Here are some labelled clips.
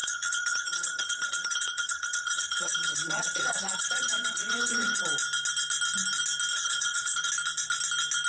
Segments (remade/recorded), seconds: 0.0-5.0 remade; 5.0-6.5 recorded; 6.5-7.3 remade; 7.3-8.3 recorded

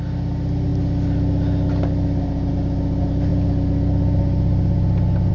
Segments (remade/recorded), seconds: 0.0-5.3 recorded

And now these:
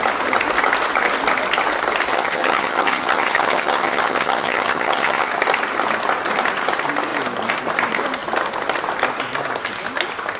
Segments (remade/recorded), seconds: 0.0-2.1 recorded; 2.1-5.3 remade; 5.3-10.4 recorded

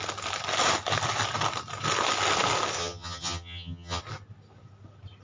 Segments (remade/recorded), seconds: 0.0-2.8 recorded; 2.8-4.0 remade; 4.0-5.2 recorded

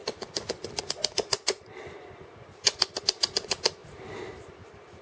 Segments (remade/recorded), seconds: 0.0-5.0 recorded

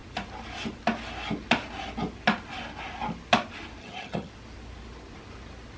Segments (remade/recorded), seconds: 0.0-3.8 recorded; 3.8-4.3 remade; 4.3-5.8 recorded

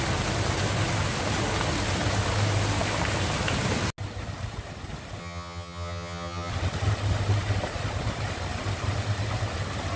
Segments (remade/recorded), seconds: 0.0-5.2 recorded; 5.2-6.5 remade; 6.5-10.0 recorded